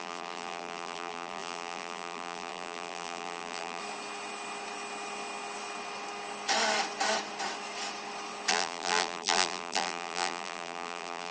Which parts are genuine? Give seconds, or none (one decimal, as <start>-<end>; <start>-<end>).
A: 3.8-8.5